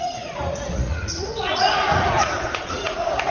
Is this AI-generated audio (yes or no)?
yes